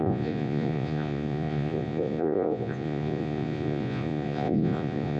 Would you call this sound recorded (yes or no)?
no